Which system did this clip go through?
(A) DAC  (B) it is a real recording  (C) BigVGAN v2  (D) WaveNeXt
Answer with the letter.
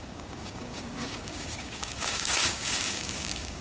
A